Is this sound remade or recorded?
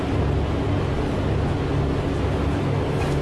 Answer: recorded